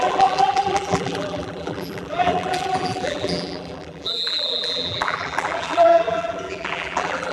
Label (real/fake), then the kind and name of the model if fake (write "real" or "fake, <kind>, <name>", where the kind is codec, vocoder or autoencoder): fake, vocoder, BigVGAN v2